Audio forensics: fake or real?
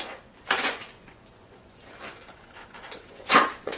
fake